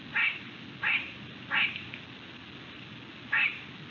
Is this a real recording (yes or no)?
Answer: yes